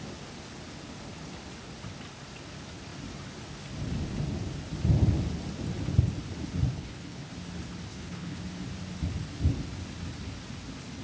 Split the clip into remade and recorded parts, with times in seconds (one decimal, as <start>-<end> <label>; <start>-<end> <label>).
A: 0.0-6.7 recorded; 6.7-7.3 remade; 7.3-7.9 recorded; 7.9-8.4 remade; 8.4-11.0 recorded